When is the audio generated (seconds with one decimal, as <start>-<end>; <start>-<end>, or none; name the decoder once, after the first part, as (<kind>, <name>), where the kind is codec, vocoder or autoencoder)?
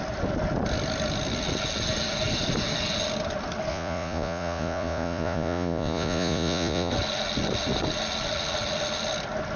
3.7-6.9 (vocoder, Vocos)